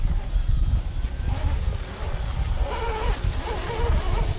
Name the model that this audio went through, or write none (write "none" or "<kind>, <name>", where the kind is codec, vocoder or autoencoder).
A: none